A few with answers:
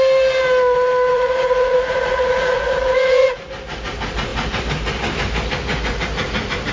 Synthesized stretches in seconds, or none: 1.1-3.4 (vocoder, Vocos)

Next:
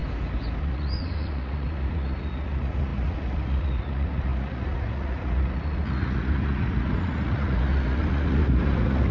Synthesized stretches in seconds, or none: 0.6-9.1 (vocoder, Vocos)

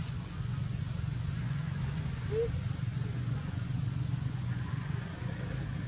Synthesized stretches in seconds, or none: 0.0-0.8 (vocoder, Vocos); 1.4-2.3; 2.9-5.3

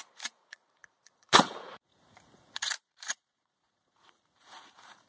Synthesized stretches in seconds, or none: 0.0-5.1 (vocoder, Vocos)

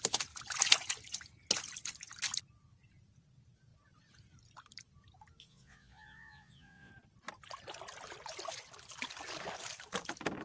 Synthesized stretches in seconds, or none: 5.4-6.9 (vocoder, Vocos)

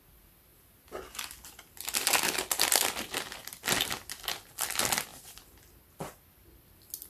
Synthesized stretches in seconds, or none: none

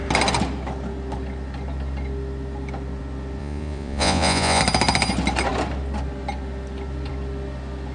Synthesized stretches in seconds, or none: 3.4-4.6 (vocoder, Vocos)

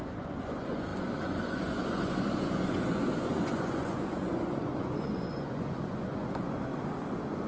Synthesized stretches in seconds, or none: 0.0-6.7 (vocoder, Vocos)